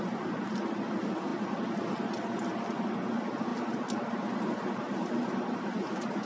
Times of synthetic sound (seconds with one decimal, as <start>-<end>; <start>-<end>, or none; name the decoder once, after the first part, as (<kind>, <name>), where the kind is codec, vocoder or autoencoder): 3.5-5.6 (vocoder, BigVGAN v2)